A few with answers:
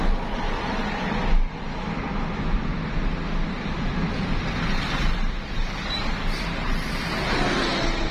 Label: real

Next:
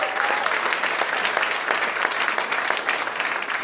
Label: real